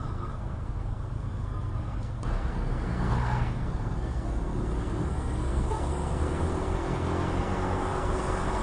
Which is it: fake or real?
fake